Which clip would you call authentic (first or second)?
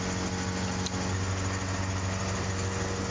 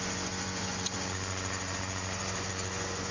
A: first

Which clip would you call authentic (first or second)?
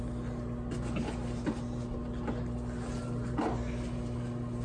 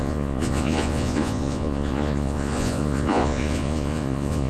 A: first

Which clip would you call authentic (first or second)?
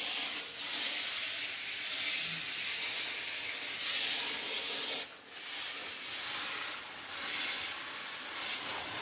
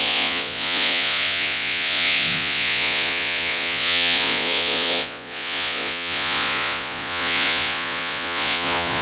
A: first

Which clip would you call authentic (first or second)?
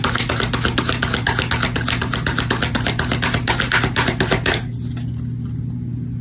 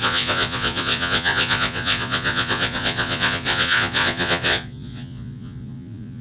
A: first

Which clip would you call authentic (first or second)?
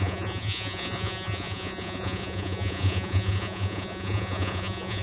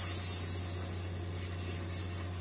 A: second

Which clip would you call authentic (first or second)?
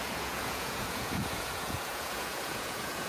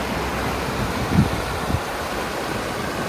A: second